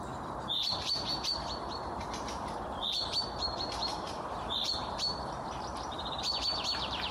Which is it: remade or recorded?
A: remade